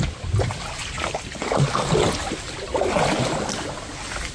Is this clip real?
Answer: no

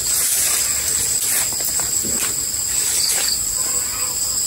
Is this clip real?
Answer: yes